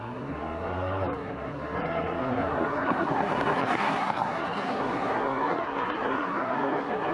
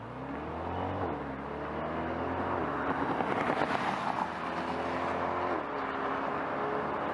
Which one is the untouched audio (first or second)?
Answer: second